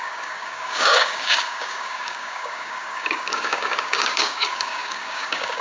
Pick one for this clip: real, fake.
fake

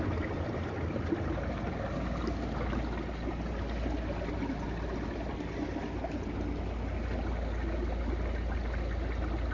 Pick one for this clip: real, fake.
real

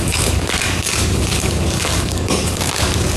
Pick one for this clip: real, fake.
fake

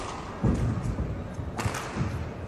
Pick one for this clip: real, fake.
real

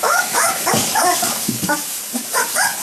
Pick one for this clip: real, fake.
fake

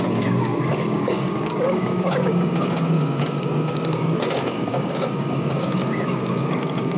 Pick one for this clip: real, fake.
fake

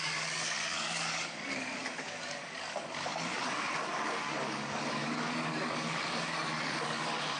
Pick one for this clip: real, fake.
fake